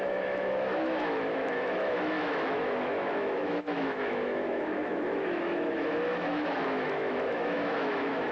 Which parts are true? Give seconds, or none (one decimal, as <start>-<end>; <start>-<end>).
none